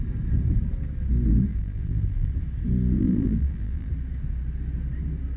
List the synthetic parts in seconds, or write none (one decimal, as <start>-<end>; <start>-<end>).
1.5-2.3; 3.0-3.9